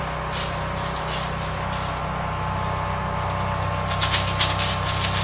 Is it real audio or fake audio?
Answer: real